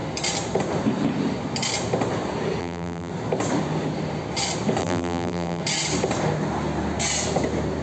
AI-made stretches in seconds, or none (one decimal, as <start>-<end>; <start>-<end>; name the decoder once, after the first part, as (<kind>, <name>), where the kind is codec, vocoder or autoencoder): 2.6-3.1 (vocoder, BigVGAN v2); 4.8-5.6